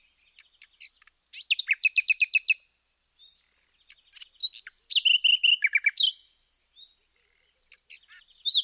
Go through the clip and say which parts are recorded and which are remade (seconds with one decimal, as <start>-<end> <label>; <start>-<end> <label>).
0.0-8.6 recorded

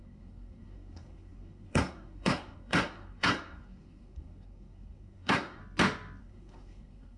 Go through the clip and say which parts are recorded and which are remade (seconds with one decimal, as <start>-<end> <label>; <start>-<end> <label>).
0.0-5.6 remade; 5.6-6.2 recorded; 6.2-7.2 remade

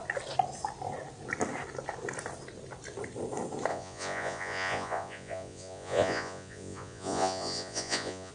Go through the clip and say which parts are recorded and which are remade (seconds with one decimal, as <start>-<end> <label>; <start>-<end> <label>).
0.0-3.7 recorded; 3.7-8.3 remade

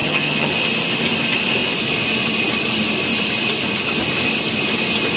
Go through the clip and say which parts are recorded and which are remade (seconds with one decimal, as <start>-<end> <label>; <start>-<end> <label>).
0.0-0.5 remade; 0.5-5.2 recorded